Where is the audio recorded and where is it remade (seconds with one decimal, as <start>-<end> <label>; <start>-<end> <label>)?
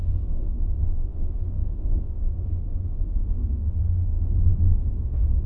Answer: 0.0-5.5 remade